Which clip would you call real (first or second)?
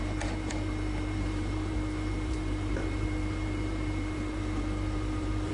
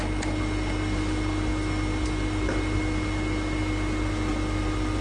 second